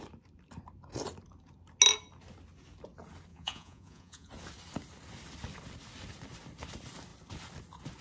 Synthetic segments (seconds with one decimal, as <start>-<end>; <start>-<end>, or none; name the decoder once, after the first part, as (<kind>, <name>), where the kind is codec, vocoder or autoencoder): 3.3-4.3 (vocoder, Vocos)